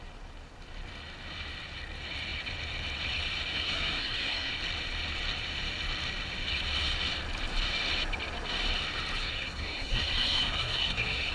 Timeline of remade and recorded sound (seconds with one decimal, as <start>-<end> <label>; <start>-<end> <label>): 0.0-3.5 recorded; 3.5-4.5 remade; 4.5-9.2 recorded; 9.2-11.3 remade